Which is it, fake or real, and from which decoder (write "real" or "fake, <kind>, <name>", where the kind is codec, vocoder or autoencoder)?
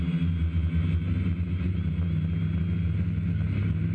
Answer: real